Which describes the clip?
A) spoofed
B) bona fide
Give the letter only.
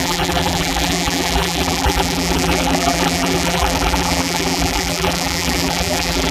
A